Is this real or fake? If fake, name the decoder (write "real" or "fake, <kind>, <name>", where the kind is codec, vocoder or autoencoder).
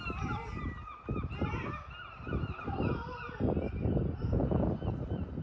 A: real